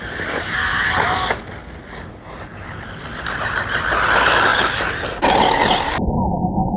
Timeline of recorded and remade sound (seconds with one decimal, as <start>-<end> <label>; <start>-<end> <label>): 0.0-6.8 recorded